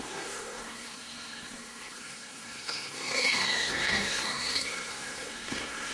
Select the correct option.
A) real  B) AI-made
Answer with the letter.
B